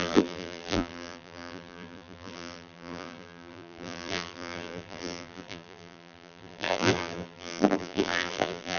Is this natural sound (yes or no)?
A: no